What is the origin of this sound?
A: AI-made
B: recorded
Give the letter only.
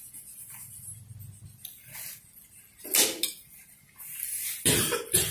B